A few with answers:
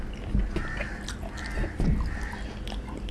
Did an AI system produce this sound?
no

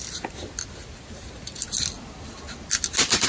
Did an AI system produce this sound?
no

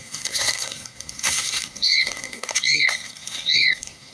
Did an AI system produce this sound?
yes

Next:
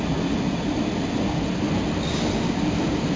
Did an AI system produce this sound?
no